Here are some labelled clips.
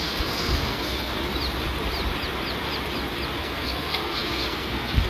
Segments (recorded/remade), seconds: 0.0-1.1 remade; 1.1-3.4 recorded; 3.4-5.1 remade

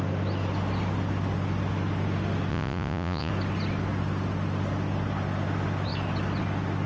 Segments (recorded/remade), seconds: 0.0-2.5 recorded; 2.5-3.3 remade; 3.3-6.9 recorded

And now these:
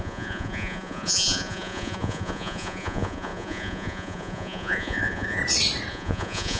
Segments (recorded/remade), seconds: 0.0-5.4 remade; 5.4-5.9 recorded; 5.9-6.6 remade